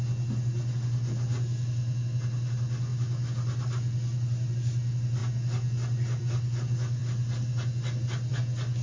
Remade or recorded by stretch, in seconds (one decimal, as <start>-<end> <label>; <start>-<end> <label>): 0.0-8.8 recorded